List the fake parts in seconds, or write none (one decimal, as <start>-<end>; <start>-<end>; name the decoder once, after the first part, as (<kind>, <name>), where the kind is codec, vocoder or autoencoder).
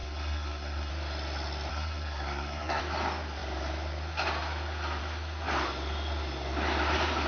0.0-0.9 (codec, SNAC); 1.7-2.8